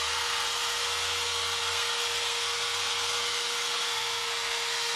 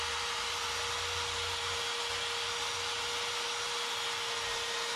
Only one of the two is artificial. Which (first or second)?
first